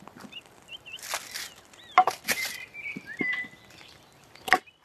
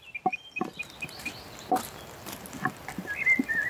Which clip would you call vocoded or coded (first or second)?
first